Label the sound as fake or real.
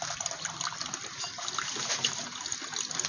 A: real